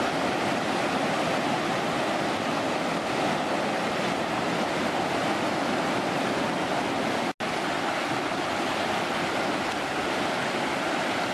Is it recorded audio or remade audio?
recorded